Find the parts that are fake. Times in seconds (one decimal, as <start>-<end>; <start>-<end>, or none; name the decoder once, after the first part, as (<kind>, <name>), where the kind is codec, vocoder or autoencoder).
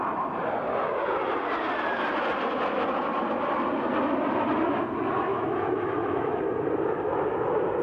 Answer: 5.3-6.4 (autoencoder, DAC-VAE)